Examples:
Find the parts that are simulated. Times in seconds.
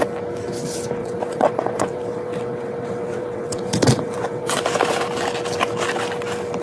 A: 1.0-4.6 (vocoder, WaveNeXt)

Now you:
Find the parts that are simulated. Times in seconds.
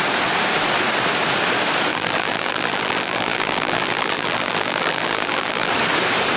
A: 1.9-5.7 (vocoder, BigVGAN v2)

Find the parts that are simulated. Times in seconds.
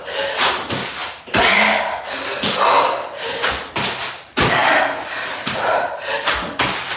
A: none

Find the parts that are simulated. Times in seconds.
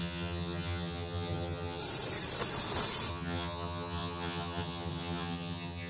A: 0.0-1.8 (vocoder, HiFi-GAN); 3.1-5.9